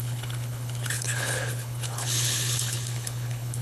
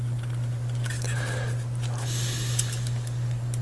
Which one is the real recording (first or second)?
second